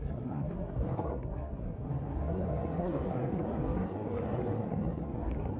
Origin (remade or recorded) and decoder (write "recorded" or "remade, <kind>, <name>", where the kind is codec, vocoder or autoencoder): remade, codec, SNAC